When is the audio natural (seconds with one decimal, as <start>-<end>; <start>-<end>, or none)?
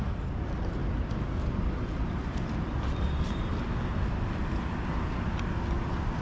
0.0-6.2